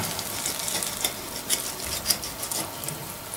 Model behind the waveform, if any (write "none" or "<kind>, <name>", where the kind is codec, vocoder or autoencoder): none